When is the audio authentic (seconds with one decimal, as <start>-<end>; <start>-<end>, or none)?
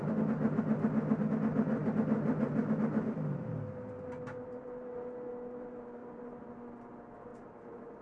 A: 0.0-6.0; 6.5-8.0